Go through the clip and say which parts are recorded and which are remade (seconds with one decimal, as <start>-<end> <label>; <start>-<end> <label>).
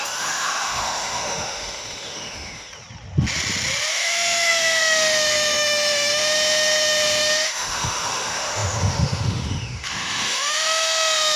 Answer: 0.0-2.7 remade; 2.7-3.9 recorded; 3.9-11.4 remade